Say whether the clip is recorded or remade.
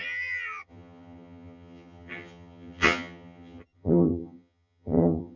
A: remade